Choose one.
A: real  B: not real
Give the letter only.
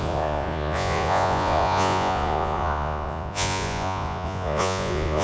B